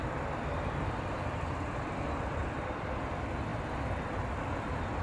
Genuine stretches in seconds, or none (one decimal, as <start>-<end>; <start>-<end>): 3.0-5.0